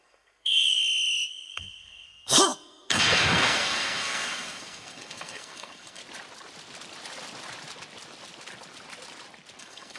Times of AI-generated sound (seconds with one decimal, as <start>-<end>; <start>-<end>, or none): 0.0-0.8; 1.3-6.0; 9.6-10.0